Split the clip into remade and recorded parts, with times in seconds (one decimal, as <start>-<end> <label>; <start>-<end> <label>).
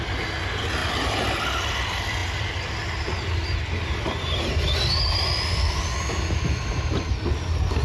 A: 0.0-7.8 recorded